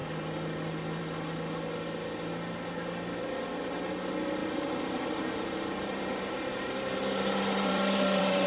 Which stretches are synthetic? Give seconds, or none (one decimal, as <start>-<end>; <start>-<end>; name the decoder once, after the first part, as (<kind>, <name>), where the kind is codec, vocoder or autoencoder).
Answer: 4.4-8.5 (vocoder, BigVGAN v2)